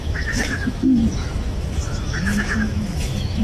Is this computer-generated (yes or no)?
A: yes